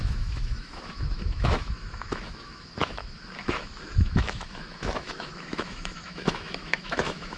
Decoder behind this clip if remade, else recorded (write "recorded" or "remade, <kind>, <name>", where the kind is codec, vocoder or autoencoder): remade, autoencoder, DAC-VAE